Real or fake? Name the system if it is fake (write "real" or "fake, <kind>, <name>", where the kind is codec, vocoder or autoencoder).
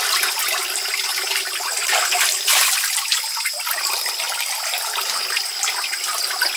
real